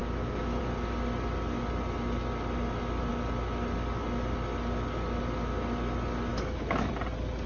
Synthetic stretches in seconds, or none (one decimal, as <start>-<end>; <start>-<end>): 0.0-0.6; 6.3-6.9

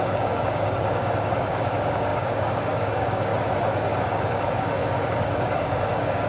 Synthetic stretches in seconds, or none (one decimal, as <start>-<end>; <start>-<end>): 0.0-3.3; 4.0-6.3

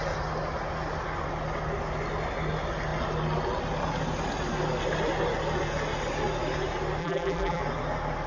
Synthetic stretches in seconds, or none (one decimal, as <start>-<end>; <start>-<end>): 7.0-7.6